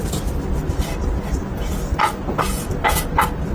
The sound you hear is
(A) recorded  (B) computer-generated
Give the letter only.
A